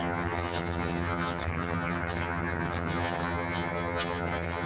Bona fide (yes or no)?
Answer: no